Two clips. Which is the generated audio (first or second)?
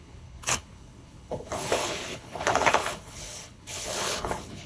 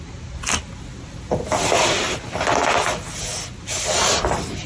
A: first